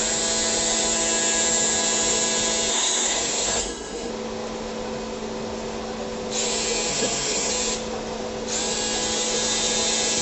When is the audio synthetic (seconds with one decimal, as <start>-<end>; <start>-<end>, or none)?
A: 2.7-4.1; 6.9-7.5